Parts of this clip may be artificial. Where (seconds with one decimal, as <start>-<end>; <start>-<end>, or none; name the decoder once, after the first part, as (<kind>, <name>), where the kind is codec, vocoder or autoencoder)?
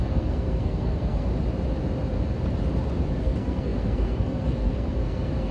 0.0-1.3 (codec, SNAC); 3.2-5.5